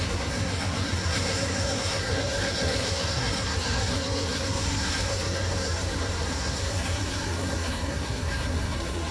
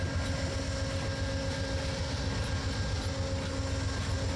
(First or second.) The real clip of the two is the second